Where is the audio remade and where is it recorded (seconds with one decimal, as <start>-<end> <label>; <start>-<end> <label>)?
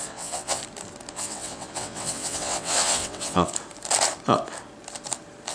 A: 0.0-0.6 remade; 0.6-1.1 recorded; 1.1-3.5 remade; 3.5-5.5 recorded